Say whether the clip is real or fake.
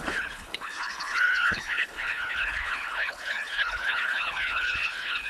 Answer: fake